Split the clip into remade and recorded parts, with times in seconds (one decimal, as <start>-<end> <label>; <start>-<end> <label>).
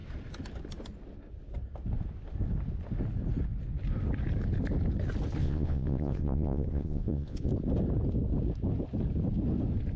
0.0-5.4 recorded; 5.4-7.5 remade; 7.5-10.0 recorded